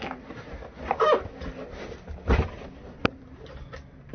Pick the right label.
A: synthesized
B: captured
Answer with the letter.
B